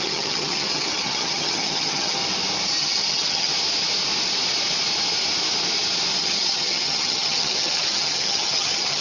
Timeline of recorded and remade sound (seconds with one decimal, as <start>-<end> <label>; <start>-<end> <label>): 0.0-2.2 remade; 2.2-2.8 recorded; 2.8-3.5 remade; 3.5-6.2 recorded; 6.2-9.0 remade